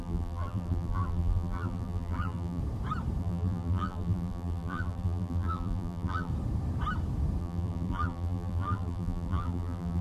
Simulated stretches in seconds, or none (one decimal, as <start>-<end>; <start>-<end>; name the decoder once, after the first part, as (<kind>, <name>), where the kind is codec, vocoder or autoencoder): 0.0-2.6 (vocoder, BigVGAN v2); 3.2-6.3; 7.4-10.0